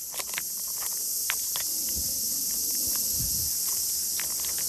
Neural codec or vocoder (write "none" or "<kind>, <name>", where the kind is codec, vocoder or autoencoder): none